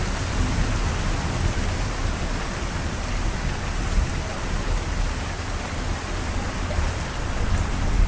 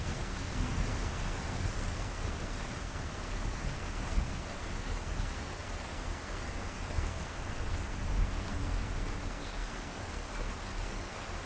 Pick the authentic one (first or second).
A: first